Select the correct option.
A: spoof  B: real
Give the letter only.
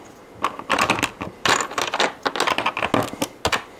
B